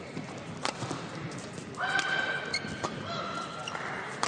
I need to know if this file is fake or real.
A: real